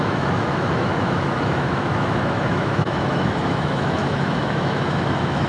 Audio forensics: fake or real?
fake